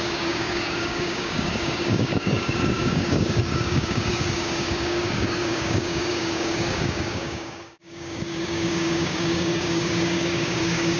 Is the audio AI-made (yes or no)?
yes